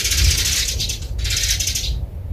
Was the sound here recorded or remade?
recorded